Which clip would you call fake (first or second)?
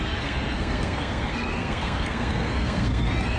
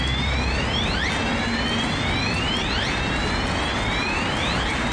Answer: first